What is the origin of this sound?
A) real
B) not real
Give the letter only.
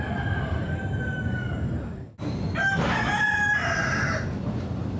A